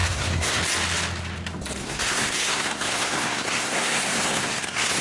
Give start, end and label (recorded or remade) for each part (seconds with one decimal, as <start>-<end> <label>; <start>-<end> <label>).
0.0-0.6 remade; 0.6-1.8 recorded; 1.8-5.0 remade

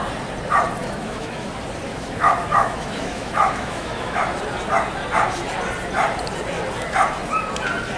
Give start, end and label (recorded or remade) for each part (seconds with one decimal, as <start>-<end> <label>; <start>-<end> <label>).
0.0-0.8 recorded; 0.8-1.5 remade; 1.5-1.9 recorded; 1.9-4.2 remade; 4.2-8.0 recorded

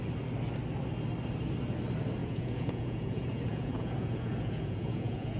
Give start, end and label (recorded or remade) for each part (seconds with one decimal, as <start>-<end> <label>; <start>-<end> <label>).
0.0-2.2 recorded; 2.2-5.4 remade

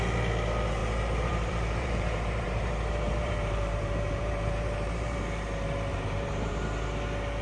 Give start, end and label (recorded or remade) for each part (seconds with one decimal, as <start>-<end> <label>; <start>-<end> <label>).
0.0-0.8 recorded; 0.8-5.2 remade; 5.2-5.9 recorded; 5.9-6.5 remade; 6.5-7.4 recorded